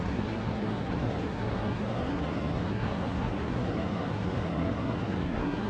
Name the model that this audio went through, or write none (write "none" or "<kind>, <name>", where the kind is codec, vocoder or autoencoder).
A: codec, SNAC